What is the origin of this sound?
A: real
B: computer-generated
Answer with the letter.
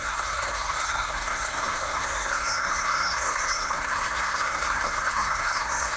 B